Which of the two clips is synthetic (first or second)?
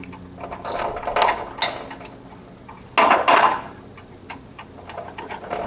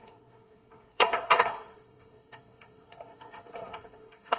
second